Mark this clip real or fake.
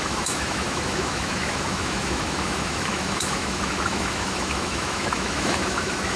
fake